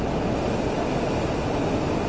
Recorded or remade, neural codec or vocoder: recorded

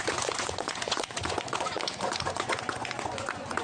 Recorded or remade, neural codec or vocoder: remade, vocoder, Vocos